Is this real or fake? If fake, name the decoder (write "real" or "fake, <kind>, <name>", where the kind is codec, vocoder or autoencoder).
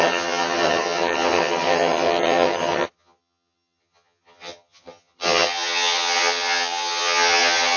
fake, vocoder, HiFi-GAN